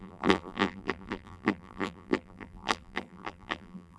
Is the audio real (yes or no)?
no